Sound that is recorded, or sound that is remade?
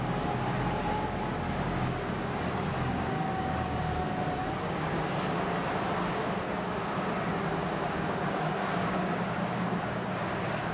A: remade